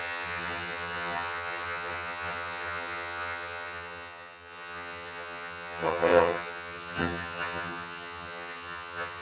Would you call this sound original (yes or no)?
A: no